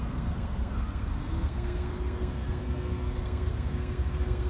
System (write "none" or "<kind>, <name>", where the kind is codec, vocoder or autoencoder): codec, SNAC